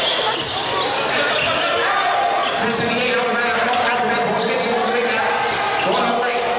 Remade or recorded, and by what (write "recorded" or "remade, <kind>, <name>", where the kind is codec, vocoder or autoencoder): recorded